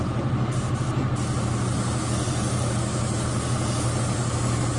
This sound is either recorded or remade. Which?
recorded